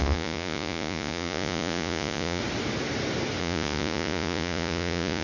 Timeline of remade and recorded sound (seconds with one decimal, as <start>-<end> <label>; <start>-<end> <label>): 0.0-2.4 remade; 2.4-3.4 recorded; 3.4-5.2 remade

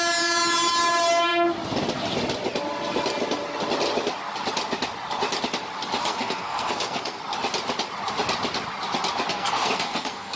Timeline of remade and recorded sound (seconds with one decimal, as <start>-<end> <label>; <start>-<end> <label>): 0.0-6.0 recorded; 6.0-7.2 remade; 7.2-9.3 recorded; 9.3-10.4 remade